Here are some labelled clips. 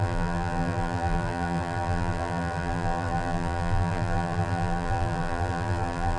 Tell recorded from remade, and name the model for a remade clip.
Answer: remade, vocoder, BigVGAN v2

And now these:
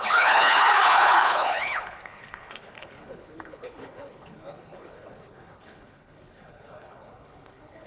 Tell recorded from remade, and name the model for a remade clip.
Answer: remade, codec, HILCodec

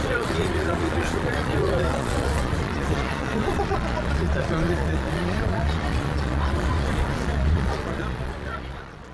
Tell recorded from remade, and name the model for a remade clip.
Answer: remade, vocoder, Vocos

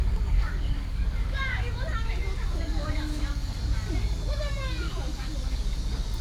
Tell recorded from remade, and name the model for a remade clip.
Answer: remade, codec, DAC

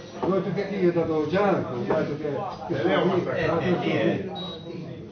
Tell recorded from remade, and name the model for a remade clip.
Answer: recorded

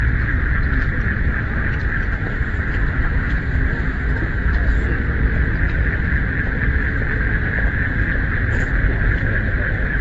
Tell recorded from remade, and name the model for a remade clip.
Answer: recorded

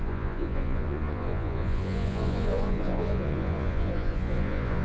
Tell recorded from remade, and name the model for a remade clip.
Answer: remade, vocoder, Vocos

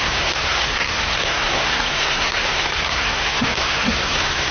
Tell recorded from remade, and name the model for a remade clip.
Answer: remade, codec, SNAC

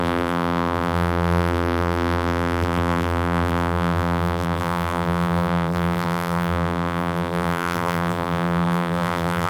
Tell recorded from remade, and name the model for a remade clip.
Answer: remade, vocoder, BigVGAN v2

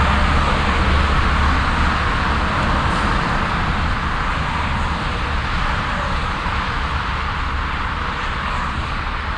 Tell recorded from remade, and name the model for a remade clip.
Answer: recorded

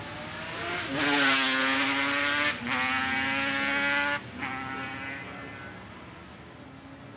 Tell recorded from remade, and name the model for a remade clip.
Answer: recorded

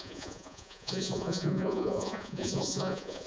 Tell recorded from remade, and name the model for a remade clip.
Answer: remade, vocoder, Vocos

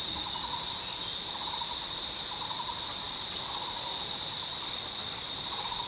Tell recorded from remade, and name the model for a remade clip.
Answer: remade, vocoder, BigVGAN v2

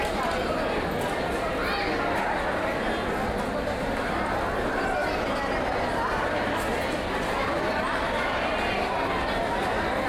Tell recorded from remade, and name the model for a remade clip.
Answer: recorded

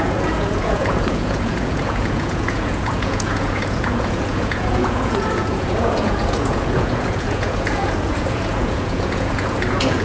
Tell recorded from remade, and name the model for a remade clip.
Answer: remade, vocoder, Vocos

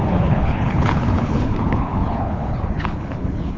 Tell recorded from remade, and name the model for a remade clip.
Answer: remade, codec, HILCodec